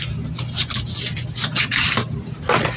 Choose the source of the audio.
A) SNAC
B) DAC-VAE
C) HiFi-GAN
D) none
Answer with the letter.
D